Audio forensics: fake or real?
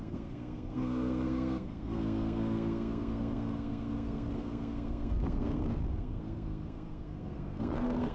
fake